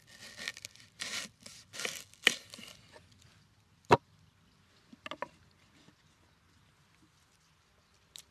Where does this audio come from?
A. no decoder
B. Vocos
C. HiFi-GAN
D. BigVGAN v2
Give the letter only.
A